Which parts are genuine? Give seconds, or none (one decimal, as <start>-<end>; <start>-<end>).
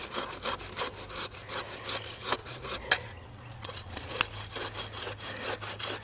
0.0-2.4; 4.2-6.0